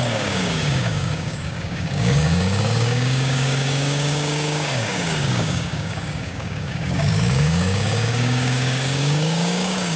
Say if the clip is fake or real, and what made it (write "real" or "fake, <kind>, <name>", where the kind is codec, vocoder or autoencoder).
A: fake, codec, DAC